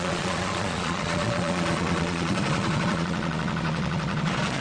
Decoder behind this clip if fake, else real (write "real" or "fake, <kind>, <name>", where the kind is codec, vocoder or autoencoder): fake, vocoder, Vocos